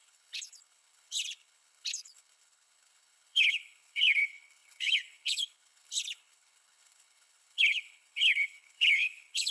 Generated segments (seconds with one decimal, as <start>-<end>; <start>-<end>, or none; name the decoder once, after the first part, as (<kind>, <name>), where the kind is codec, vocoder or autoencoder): 0.0-9.5 (codec, HILCodec)